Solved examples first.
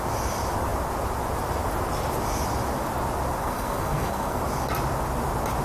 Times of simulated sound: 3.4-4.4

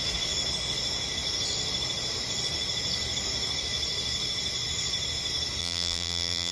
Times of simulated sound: 5.6-6.5

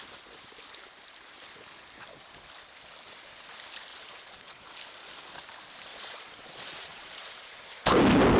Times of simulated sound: 3.9-4.7; 5.9-7.7

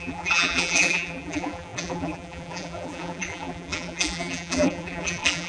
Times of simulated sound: 0.0-5.5

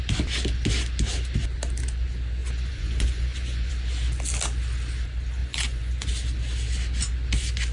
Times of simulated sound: 2.4-3.7; 5.4-6.1